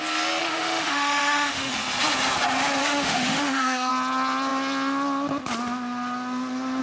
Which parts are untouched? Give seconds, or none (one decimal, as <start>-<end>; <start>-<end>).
0.0-0.4; 1.7-2.8; 3.9-6.8